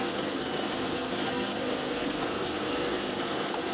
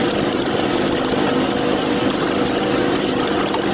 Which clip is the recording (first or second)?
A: second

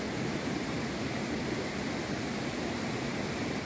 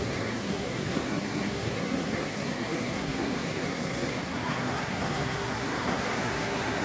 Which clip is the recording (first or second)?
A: first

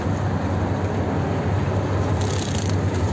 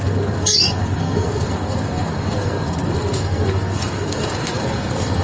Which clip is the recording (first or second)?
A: first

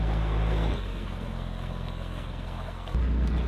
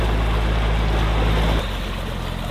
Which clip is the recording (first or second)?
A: second